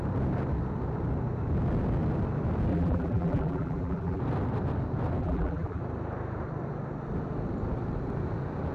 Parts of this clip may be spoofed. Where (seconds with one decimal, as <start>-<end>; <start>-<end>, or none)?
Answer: 2.7-4.2; 5.2-5.8